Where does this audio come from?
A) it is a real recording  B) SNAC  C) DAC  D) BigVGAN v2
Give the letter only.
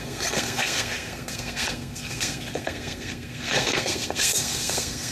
B